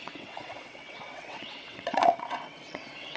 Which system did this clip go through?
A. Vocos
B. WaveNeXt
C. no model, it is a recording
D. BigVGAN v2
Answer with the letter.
B